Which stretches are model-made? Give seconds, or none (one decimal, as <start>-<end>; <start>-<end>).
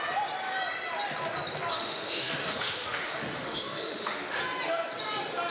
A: 1.7-4.4